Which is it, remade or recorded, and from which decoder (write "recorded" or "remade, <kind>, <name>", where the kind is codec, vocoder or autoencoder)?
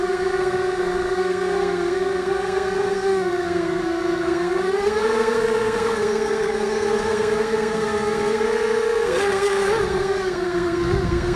remade, codec, SNAC